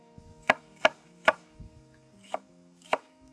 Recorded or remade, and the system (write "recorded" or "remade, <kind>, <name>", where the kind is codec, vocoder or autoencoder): remade, codec, DAC